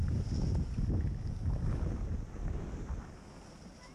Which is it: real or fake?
real